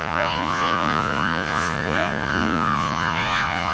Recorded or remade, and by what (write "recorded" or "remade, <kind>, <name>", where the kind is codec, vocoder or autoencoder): remade, vocoder, Vocos